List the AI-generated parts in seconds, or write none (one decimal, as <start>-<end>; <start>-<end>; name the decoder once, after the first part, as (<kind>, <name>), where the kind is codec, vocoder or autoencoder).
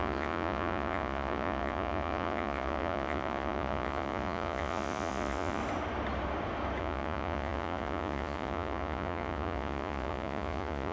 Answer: 0.0-5.6 (vocoder, Vocos); 6.8-10.9